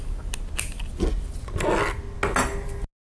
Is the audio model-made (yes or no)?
no